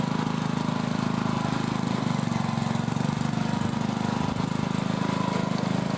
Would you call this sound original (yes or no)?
yes